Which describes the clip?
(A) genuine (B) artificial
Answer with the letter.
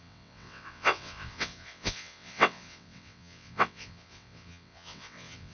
B